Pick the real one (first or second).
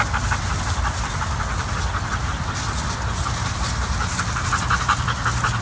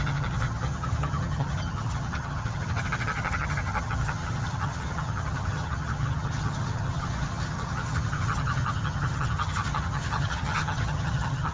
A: first